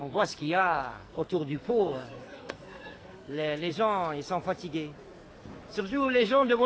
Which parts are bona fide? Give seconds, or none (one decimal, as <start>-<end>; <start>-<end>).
3.7-5.8